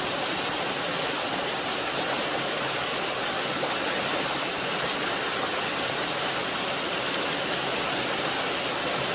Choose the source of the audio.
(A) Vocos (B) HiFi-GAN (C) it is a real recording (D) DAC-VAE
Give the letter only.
C